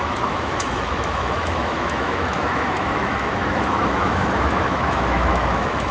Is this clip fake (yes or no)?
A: yes